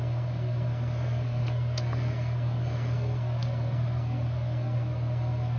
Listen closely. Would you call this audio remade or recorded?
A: remade